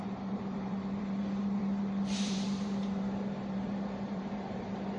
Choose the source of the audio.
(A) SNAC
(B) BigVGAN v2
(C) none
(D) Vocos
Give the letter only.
B